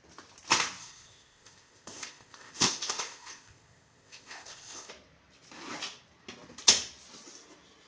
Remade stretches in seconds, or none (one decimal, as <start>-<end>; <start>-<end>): 0.8-4.9